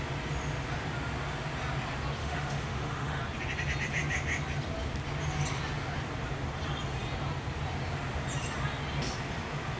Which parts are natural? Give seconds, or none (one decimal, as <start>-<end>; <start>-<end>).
0.0-2.2; 3.2-9.8